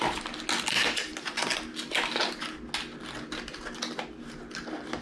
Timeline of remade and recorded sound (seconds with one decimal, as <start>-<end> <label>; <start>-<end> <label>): 0.0-5.0 recorded